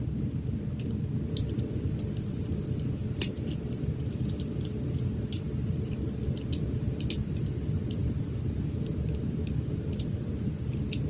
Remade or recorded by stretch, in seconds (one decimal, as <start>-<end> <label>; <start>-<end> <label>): 0.0-8.0 recorded; 8.0-9.9 remade; 9.9-11.1 recorded